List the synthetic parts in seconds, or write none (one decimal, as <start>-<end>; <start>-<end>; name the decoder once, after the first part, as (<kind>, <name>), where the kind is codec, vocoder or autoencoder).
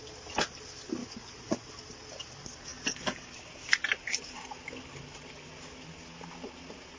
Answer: 1.0-1.7 (vocoder, Vocos)